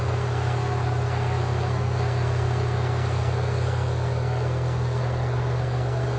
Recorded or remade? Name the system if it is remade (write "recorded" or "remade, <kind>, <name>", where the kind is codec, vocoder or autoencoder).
remade, codec, SNAC